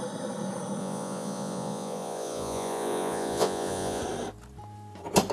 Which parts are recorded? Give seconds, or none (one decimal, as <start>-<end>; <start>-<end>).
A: 0.0-0.8; 4.0-5.3